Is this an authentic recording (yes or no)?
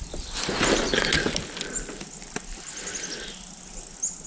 yes